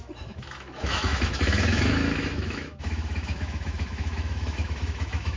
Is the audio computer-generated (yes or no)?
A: yes